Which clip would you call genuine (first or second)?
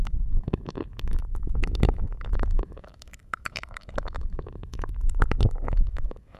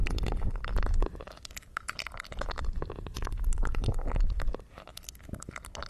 second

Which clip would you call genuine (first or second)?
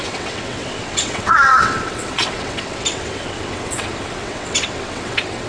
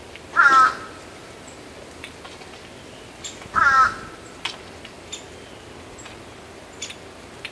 second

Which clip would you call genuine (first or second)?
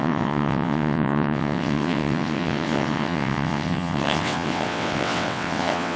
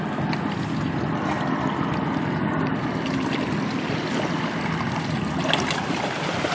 second